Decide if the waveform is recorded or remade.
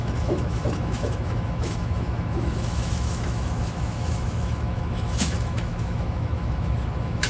remade